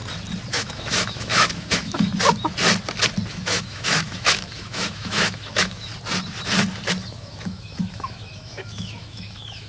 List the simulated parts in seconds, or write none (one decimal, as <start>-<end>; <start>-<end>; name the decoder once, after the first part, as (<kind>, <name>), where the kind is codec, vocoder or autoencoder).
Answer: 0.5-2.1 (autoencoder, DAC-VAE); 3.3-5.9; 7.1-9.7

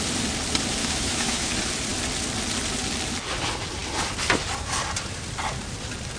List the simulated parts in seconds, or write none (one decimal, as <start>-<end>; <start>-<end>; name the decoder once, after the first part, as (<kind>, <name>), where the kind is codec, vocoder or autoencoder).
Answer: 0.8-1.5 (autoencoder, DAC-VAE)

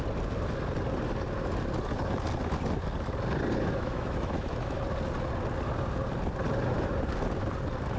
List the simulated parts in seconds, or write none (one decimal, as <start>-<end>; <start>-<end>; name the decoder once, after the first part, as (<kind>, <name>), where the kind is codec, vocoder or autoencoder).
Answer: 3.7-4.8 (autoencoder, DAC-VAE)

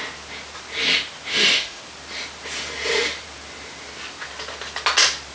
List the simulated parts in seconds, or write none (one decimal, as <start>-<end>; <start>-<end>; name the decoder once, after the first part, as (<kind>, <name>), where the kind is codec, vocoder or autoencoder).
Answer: 1.3-1.8 (autoencoder, DAC-VAE)

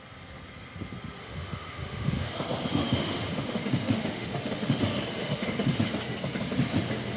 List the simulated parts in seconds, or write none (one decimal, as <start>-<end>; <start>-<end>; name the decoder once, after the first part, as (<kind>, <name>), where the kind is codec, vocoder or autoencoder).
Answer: 1.2-2.3 (autoencoder, DAC-VAE); 2.8-4.8; 5.2-5.8

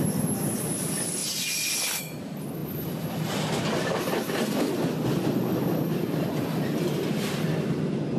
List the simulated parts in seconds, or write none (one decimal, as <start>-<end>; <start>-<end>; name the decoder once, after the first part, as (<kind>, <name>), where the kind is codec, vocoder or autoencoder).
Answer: none

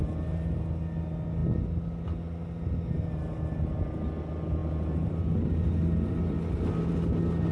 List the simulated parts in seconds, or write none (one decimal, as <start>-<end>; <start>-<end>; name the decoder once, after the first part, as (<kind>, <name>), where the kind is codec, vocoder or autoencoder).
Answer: none